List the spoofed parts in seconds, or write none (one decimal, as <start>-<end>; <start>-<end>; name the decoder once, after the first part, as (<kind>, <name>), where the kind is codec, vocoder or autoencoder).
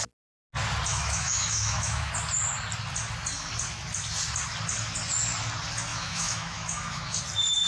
0.9-2.1 (autoencoder, DAC-VAE); 5.9-7.2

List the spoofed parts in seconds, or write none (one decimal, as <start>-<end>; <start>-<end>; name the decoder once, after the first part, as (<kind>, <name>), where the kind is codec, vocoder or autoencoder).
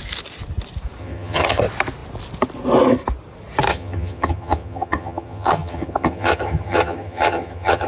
1.0-1.6 (vocoder, HiFi-GAN); 3.7-7.9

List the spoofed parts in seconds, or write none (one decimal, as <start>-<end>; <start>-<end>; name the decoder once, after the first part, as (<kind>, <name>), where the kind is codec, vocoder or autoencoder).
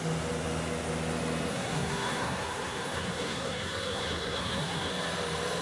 1.5-4.9 (codec, SNAC)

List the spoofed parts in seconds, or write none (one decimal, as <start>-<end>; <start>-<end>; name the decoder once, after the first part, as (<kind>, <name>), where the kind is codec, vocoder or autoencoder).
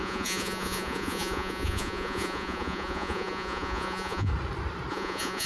0.0-4.3 (vocoder, Vocos); 4.9-5.5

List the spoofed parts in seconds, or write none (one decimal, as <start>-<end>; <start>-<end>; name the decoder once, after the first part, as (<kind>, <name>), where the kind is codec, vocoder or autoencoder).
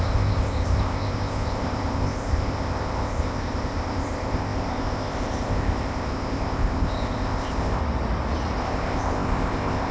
0.0-7.8 (codec, ZipCodec); 8.6-9.9